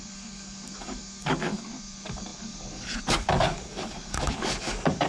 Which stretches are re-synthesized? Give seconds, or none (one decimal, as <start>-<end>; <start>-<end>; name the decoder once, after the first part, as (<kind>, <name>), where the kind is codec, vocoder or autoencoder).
0.0-5.1 (codec, DAC)

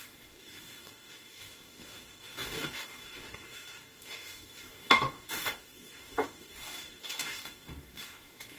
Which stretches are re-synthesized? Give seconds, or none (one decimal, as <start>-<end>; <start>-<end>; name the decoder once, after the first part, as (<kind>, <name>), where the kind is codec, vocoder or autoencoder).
0.0-8.6 (codec, DAC)

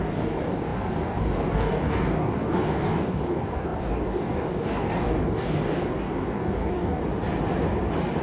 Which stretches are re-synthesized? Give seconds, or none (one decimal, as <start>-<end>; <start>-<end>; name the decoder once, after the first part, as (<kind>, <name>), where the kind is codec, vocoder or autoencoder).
0.0-7.0 (codec, DAC)

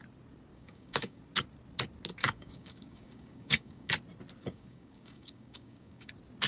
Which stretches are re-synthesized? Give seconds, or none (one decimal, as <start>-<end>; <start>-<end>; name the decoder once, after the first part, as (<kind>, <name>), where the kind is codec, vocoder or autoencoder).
0.5-1.2 (codec, DAC); 2.2-3.9; 4.4-6.1

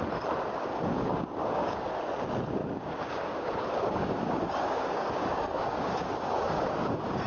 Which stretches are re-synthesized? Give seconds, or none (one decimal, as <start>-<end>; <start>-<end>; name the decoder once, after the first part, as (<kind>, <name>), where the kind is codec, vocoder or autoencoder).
0.7-2.0 (codec, DAC); 2.6-7.3

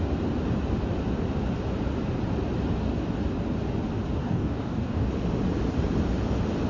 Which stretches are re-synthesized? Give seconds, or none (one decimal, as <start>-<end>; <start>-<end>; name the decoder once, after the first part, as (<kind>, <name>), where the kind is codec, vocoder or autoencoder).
4.2-5.1 (codec, DAC)